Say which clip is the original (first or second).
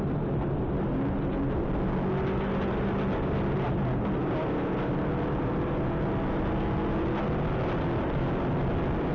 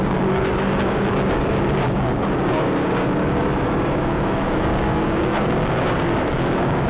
first